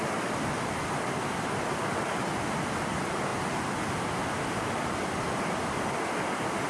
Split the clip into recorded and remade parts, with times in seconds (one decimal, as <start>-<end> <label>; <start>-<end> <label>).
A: 0.0-6.7 recorded

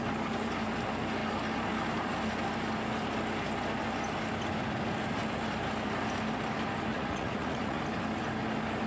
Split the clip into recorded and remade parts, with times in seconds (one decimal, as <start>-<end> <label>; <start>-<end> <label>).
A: 0.0-6.9 recorded; 6.9-7.8 remade; 7.8-8.9 recorded